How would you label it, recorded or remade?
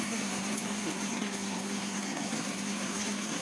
remade